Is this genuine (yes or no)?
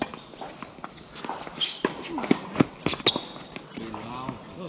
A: yes